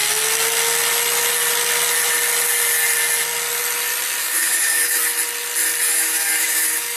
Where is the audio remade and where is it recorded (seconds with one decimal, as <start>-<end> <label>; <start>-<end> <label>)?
0.0-4.2 recorded; 4.2-5.1 remade; 5.1-5.9 recorded; 5.9-7.0 remade